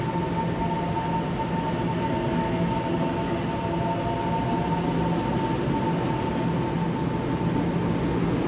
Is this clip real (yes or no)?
yes